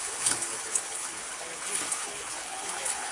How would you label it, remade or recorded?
remade